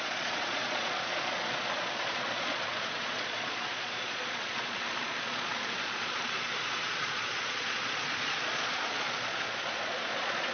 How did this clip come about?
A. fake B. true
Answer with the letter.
A